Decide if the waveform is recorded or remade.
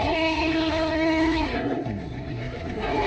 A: remade